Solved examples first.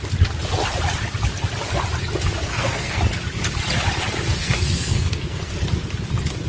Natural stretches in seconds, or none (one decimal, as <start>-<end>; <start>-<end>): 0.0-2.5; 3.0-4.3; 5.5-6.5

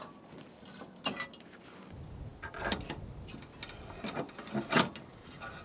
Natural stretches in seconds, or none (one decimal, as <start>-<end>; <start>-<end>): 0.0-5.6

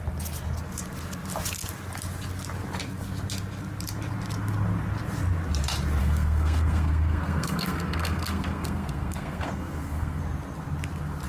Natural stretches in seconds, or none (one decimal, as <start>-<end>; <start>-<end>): 0.0-6.0; 10.2-11.3

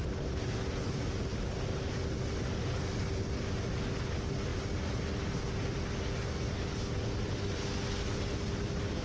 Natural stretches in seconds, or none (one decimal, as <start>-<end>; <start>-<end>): 0.0-9.0